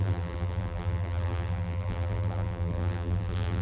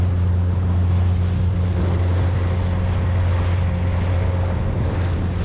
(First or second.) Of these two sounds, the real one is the second